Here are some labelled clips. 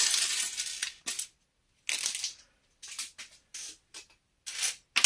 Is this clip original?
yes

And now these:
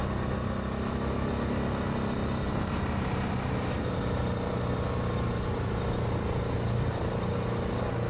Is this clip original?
yes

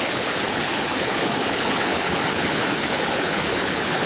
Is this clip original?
no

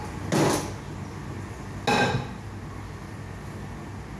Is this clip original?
yes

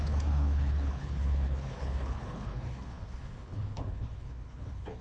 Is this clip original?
no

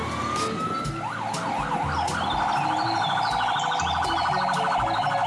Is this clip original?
yes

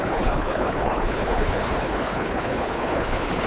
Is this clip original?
no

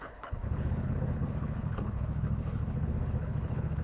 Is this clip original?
no